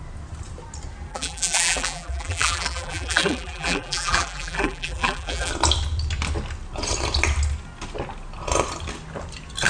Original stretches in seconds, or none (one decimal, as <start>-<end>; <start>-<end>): 0.0-1.1; 5.5-9.7